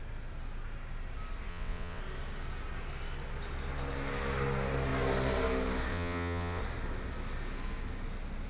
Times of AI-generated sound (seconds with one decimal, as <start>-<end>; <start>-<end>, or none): 1.5-2.0; 5.9-6.6